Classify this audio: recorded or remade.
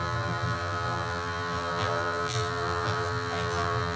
remade